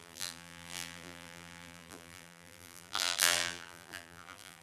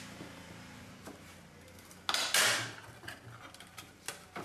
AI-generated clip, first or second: first